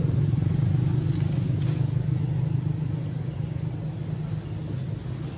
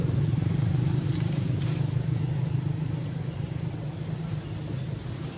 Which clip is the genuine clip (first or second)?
first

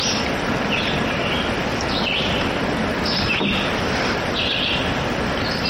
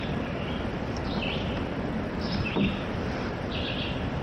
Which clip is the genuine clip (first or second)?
first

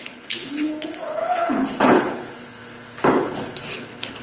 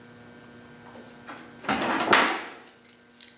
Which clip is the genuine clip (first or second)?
second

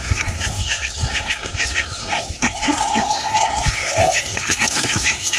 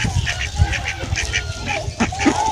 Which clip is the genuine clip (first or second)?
second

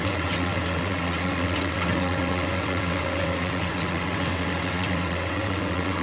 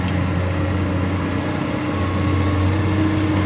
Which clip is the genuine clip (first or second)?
second